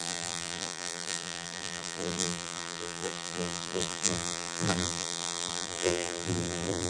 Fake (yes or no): yes